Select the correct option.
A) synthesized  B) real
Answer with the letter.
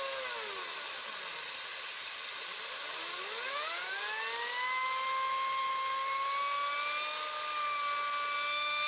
B